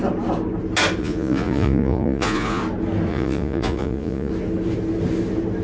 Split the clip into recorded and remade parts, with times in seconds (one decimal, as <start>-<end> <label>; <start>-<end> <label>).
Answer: 0.0-1.0 recorded; 1.0-2.6 remade; 2.6-3.1 recorded; 3.1-4.3 remade; 4.3-5.6 recorded